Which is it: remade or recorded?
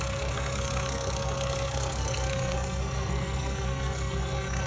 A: remade